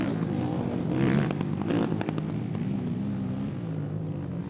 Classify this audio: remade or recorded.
recorded